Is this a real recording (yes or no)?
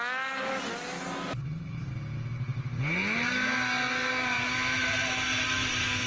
yes